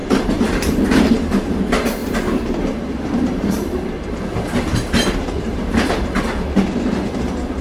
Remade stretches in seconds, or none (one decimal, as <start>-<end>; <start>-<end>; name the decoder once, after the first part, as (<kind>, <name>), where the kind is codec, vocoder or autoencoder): 0.0-1.1 (vocoder, BigVGAN v2); 2.0-4.2; 5.2-6.1